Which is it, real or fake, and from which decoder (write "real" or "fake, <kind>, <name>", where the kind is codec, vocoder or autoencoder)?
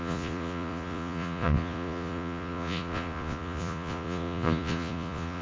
fake, vocoder, Vocos